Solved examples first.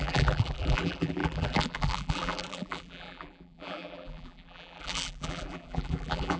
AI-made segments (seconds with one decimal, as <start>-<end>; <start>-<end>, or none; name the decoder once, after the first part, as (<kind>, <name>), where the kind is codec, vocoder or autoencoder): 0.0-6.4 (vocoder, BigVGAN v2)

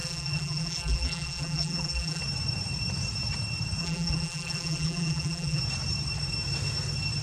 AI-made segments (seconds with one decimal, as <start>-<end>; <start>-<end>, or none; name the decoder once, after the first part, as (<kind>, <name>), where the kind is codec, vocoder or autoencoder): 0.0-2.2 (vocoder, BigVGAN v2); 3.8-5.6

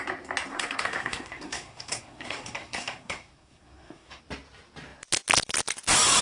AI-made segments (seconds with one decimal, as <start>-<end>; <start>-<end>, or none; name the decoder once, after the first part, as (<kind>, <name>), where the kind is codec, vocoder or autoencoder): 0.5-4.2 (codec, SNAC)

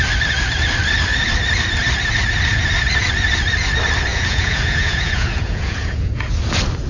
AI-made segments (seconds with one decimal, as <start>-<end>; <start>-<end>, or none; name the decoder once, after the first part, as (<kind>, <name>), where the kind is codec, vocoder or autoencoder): 4.1-6.3 (vocoder, Vocos)

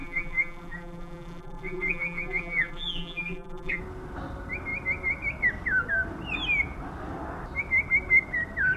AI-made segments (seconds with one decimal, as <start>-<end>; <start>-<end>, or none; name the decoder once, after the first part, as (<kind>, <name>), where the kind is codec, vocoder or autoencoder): 0.0-3.8 (vocoder, BigVGAN v2)

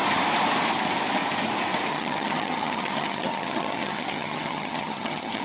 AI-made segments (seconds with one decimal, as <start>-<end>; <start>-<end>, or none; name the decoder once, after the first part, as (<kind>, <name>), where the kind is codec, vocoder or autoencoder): 1.9-5.4 (vocoder, HiFi-GAN)

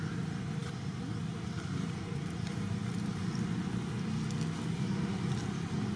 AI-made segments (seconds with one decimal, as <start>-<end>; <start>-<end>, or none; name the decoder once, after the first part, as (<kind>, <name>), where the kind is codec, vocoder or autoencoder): none

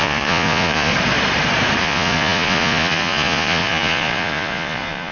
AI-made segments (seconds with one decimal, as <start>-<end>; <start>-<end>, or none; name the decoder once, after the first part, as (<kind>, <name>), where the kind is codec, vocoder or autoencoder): 0.0-0.9 (vocoder, Vocos); 1.8-5.1